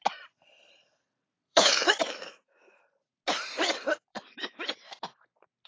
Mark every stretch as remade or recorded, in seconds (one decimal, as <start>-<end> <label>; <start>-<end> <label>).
0.0-1.5 recorded; 1.5-2.8 remade; 2.8-4.1 recorded; 4.1-5.1 remade; 5.1-5.7 recorded